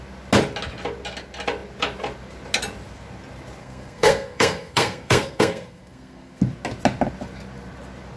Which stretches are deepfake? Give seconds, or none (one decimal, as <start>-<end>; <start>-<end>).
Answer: 3.6-6.4